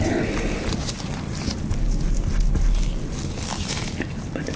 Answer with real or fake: real